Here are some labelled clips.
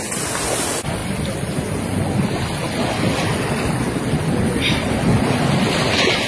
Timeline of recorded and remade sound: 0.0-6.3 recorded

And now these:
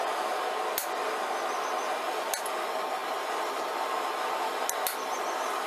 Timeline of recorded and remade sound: 0.0-5.7 recorded

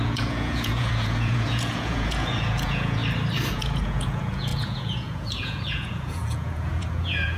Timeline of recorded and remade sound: 0.0-3.0 remade; 3.0-3.5 recorded; 3.5-7.4 remade

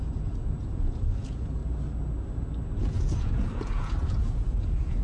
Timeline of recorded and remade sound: 0.0-1.6 remade; 1.6-2.8 recorded; 2.8-5.0 remade

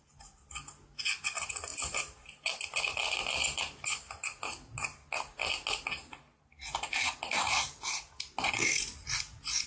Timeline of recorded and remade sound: 0.0-9.7 recorded

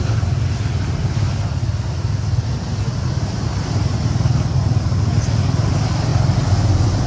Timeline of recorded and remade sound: 0.0-7.1 recorded

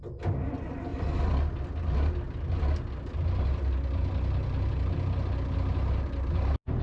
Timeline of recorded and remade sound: 0.0-6.8 recorded